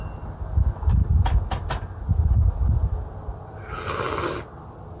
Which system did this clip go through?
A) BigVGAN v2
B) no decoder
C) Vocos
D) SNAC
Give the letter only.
B